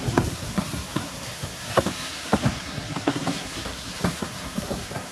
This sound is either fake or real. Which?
fake